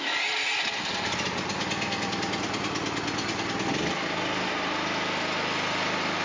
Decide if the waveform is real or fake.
real